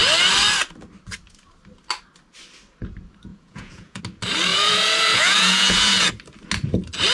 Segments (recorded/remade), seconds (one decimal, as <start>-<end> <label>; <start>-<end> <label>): 0.0-3.3 recorded; 3.3-4.0 remade; 4.0-4.5 recorded; 4.5-6.1 remade; 6.1-7.1 recorded